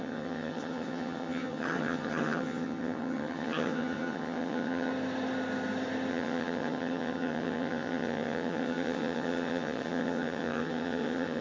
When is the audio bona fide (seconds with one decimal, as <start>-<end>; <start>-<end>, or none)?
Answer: 4.9-6.1